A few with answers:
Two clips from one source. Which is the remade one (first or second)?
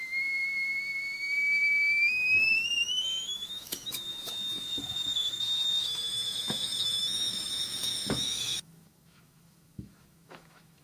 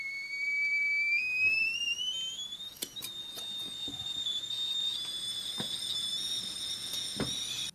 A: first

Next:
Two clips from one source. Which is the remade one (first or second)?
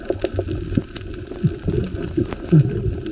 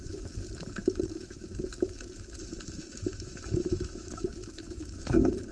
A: second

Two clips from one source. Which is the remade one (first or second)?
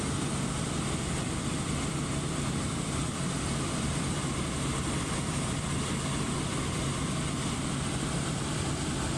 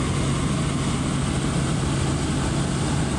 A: first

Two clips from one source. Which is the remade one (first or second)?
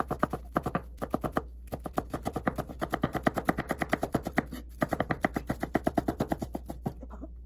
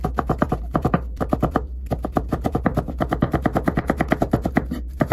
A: second